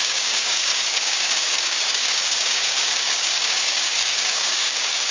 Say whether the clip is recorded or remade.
remade